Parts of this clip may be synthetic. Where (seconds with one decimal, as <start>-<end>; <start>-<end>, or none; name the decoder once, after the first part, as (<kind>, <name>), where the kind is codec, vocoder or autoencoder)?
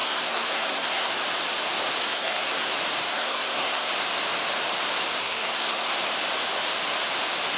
0.0-1.1 (codec, SNAC); 2.0-2.7; 3.1-3.9; 5.2-5.9